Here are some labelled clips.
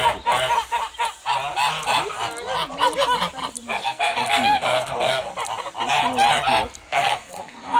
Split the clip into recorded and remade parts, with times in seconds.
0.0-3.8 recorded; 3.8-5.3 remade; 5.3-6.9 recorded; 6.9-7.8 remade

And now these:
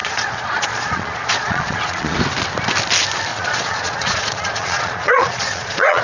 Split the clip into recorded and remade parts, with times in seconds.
0.0-2.2 remade; 2.2-3.3 recorded; 3.3-6.0 remade

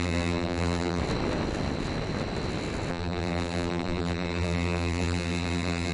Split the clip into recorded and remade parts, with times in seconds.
0.0-1.0 remade; 1.0-2.9 recorded; 2.9-5.9 remade

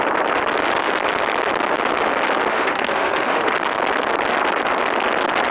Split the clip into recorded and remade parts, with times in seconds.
0.0-2.5 recorded; 2.5-3.5 remade; 3.5-5.5 recorded

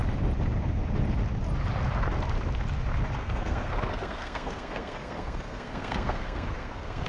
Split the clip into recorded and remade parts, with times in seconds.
0.0-3.2 recorded; 3.2-7.1 remade